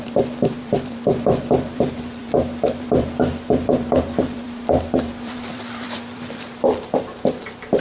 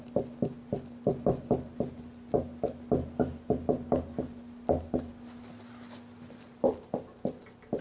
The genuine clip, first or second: second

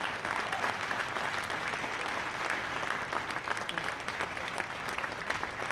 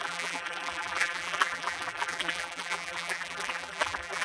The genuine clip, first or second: first